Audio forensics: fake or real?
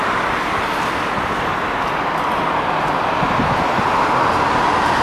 real